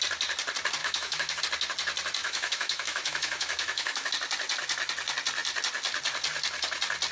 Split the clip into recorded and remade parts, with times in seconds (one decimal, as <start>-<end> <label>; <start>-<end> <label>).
0.0-0.8 recorded; 0.8-1.4 remade; 1.4-2.2 recorded; 2.2-4.1 remade; 4.1-7.1 recorded